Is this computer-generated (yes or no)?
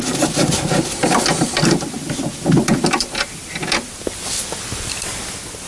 no